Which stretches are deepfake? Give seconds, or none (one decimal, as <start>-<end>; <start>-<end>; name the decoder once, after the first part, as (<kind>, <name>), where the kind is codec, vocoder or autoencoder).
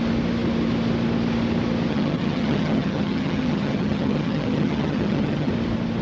1.9-5.5 (vocoder, HiFi-GAN)